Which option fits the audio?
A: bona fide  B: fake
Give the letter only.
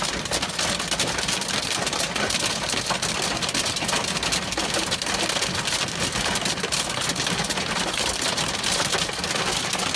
A